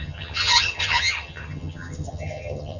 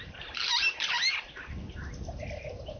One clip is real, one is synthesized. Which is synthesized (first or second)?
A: first